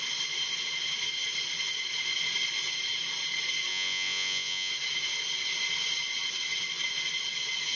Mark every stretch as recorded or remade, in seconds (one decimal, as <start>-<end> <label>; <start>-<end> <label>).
0.0-3.7 recorded; 3.7-4.7 remade; 4.7-7.8 recorded